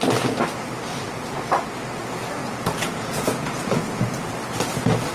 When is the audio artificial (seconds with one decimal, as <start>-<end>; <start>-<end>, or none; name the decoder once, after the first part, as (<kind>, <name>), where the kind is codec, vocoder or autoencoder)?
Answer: 2.4-4.3 (vocoder, Vocos)